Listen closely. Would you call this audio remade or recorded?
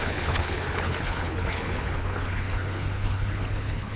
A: remade